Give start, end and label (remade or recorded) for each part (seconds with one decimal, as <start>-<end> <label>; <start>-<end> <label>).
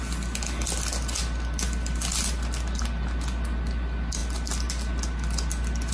0.0-5.9 recorded